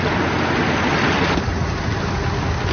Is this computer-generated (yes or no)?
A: no